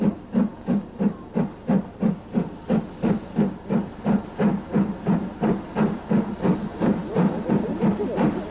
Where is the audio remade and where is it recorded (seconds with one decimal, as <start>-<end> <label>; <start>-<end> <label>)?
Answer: 0.0-6.7 recorded; 6.7-7.5 remade; 7.5-8.5 recorded